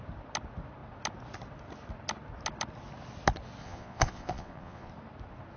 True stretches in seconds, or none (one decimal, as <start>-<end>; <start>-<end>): 0.0-3.6; 4.9-5.6